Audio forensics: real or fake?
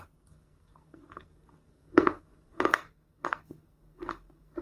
fake